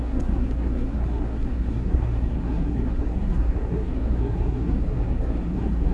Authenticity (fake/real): fake